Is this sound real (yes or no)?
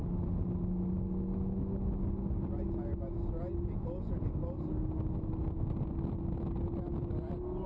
yes